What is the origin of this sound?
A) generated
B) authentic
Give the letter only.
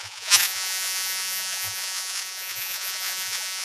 A